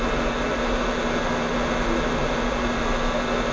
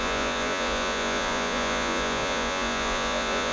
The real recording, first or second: first